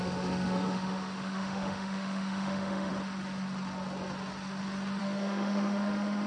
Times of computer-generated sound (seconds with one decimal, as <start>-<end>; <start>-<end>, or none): 0.0-2.9; 5.0-6.3